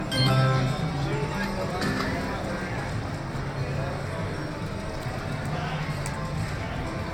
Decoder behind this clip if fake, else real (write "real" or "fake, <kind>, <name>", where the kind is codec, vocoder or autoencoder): real